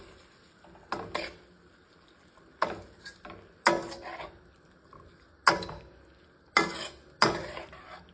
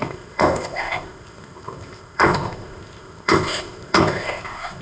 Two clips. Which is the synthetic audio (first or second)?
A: second